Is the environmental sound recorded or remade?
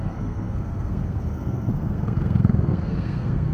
remade